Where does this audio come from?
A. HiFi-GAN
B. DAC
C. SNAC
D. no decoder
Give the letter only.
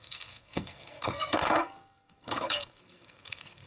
C